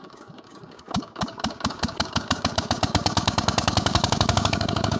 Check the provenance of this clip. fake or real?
fake